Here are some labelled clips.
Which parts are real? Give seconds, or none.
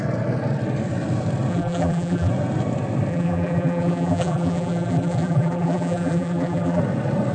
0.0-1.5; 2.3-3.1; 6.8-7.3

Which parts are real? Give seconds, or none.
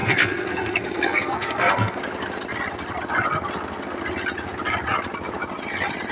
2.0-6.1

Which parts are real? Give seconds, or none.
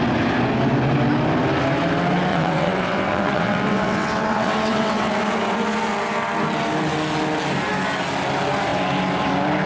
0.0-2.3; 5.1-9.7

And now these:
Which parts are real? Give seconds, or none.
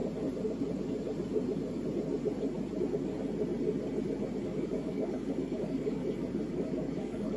0.0-4.4; 6.0-6.5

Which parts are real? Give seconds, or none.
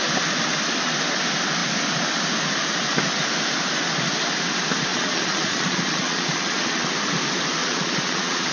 0.0-4.9; 6.9-7.6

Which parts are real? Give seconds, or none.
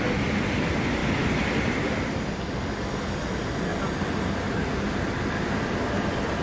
1.0-1.7; 3.7-5.1